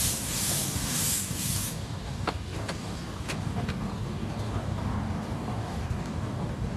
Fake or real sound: fake